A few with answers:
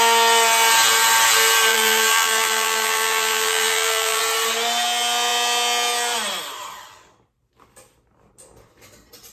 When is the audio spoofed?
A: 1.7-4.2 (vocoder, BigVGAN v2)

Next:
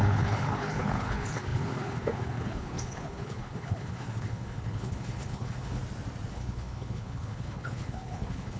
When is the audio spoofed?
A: 0.0-5.8 (codec, HILCodec); 6.3-8.6